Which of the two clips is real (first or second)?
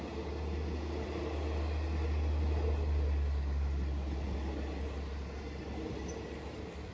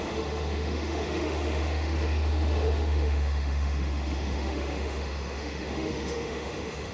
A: first